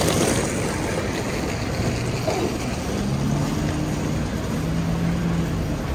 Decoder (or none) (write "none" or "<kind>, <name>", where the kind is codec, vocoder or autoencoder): none